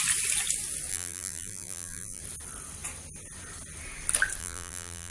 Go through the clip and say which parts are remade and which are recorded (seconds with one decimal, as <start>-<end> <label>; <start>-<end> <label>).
0.0-0.9 recorded; 0.9-2.2 remade; 2.2-4.4 recorded; 4.4-5.1 remade